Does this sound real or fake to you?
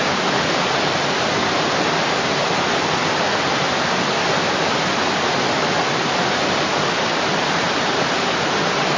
real